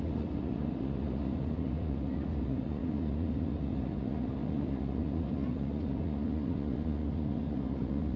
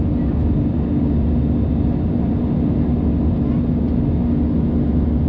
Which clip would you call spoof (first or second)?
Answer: first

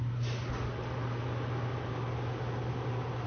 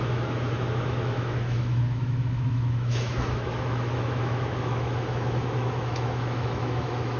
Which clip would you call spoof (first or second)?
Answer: second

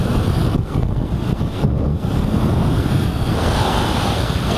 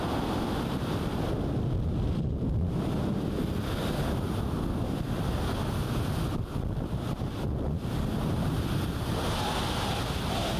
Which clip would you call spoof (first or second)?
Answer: first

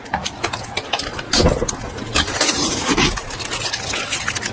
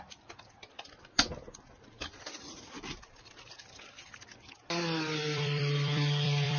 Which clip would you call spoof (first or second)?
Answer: second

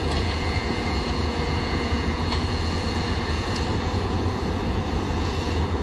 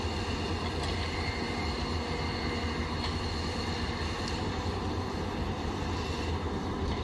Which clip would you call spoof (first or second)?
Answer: first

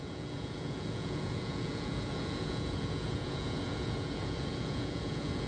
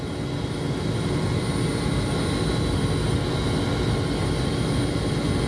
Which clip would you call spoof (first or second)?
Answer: first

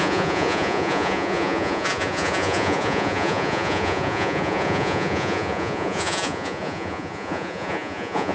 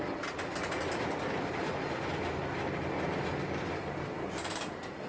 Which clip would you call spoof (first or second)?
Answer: first